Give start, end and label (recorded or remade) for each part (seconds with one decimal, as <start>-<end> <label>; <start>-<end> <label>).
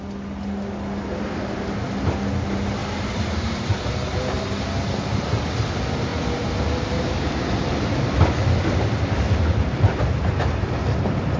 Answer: 0.0-2.8 recorded; 2.8-3.4 remade; 3.4-6.1 recorded; 6.1-10.1 remade; 10.1-11.4 recorded